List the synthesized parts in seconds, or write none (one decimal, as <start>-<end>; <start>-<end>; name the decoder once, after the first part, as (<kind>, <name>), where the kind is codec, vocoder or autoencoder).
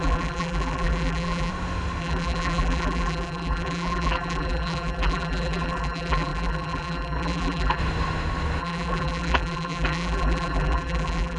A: 0.0-1.5 (vocoder, BigVGAN v2); 2.0-7.8; 8.6-11.4